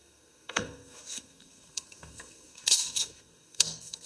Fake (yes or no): yes